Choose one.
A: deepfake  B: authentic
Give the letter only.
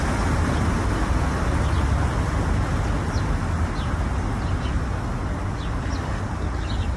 B